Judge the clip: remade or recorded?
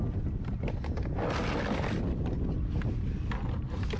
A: recorded